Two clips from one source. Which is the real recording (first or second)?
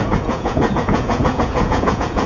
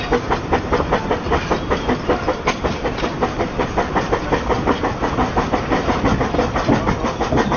second